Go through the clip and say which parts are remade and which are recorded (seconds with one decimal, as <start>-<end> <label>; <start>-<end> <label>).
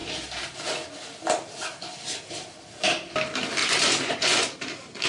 0.0-3.6 recorded; 3.6-4.5 remade; 4.5-5.1 recorded